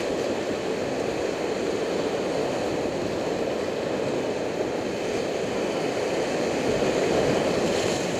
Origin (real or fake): real